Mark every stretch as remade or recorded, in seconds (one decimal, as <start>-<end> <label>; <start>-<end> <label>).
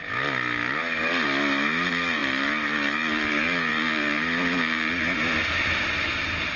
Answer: 0.0-6.6 recorded